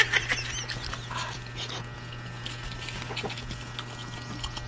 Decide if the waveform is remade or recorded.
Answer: recorded